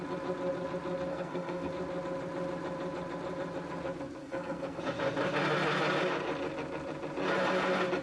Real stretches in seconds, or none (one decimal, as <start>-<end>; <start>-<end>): 0.0-1.1; 1.7-4.2; 4.8-8.0